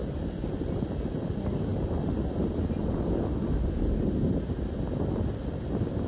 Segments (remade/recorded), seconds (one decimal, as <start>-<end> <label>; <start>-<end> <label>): 0.0-6.1 recorded